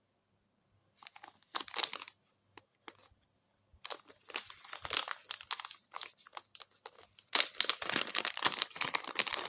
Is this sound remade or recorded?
recorded